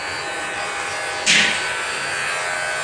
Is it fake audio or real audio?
real